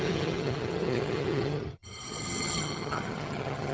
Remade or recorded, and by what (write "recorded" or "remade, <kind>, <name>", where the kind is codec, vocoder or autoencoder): remade, vocoder, HiFi-GAN